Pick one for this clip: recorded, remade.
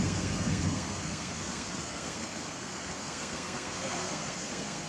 remade